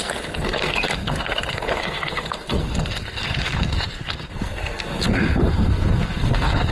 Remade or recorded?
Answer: remade